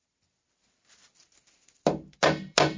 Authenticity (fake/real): fake